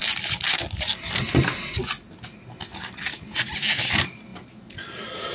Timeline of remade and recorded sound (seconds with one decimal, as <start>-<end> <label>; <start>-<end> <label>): 0.0-5.3 recorded